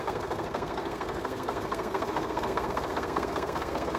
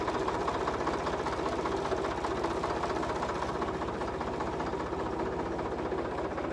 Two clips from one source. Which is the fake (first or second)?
first